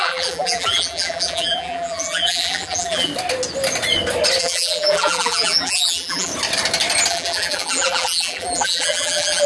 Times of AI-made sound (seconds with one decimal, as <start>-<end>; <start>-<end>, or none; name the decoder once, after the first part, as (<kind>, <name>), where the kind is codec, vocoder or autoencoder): 0.0-3.1 (vocoder, BigVGAN v2); 4.4-6.3; 7.1-9.5